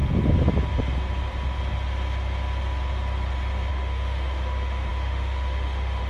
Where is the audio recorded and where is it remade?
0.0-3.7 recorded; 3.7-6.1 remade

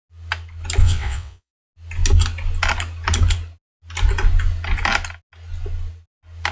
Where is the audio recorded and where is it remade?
0.0-0.8 recorded; 0.8-1.5 remade; 1.5-6.5 recorded